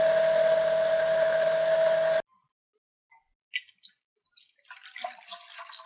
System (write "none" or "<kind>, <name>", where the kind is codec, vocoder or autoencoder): none